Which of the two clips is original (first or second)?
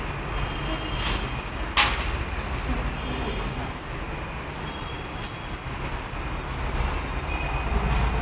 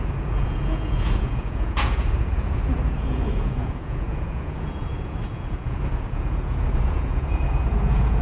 first